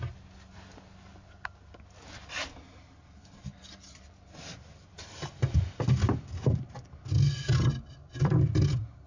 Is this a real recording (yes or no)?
yes